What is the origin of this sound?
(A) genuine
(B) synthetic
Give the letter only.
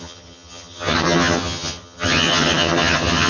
B